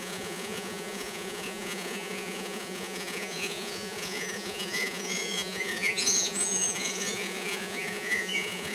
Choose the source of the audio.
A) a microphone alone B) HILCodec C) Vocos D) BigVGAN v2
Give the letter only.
C